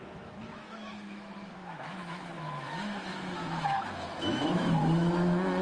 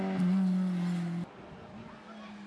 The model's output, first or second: first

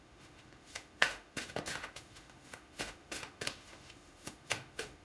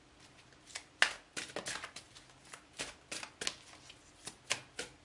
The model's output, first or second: first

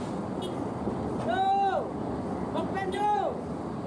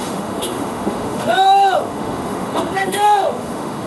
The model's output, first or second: second